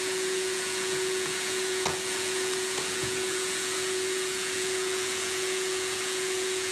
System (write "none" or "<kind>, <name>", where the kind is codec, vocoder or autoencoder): vocoder, Vocos